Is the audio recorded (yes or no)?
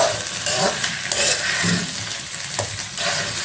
yes